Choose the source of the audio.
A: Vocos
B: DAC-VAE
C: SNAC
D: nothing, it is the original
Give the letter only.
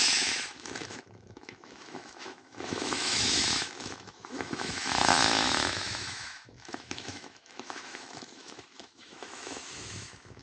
B